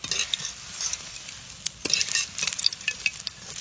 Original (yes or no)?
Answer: yes